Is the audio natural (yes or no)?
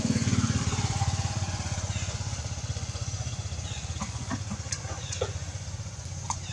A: no